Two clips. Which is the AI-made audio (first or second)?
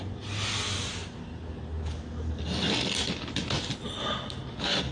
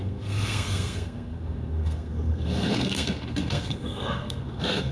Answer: second